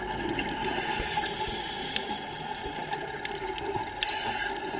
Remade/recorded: recorded